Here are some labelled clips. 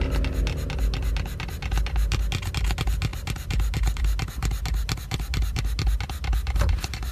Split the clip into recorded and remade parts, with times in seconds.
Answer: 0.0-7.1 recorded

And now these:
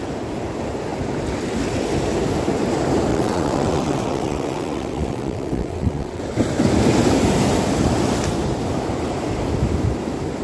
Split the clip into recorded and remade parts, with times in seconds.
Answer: 0.0-3.1 recorded; 3.1-6.2 remade; 6.2-10.4 recorded

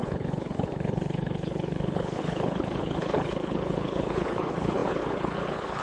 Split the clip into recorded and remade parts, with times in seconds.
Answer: 0.0-5.8 remade

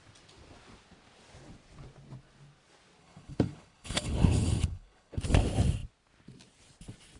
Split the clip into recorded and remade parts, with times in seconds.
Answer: 0.0-3.0 recorded; 3.0-5.2 remade; 5.2-7.2 recorded

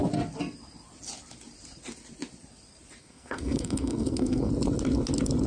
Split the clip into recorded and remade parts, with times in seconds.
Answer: 0.0-3.0 recorded; 3.0-4.5 remade; 4.5-5.5 recorded

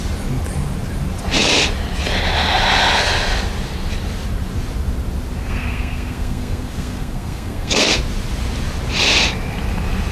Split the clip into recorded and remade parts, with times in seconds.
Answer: 0.0-5.4 recorded; 5.4-8.0 remade; 8.0-10.1 recorded

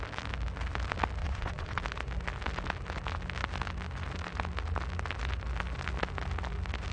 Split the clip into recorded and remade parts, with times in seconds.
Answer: 0.0-1.2 recorded; 1.2-1.8 remade; 1.8-6.9 recorded

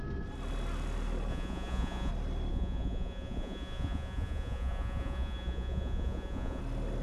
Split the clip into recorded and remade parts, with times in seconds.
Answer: 0.0-1.3 recorded; 1.3-2.1 remade; 2.1-2.5 recorded; 2.5-6.6 remade; 6.6-7.0 recorded